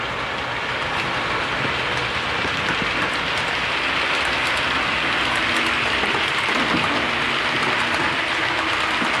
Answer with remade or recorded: recorded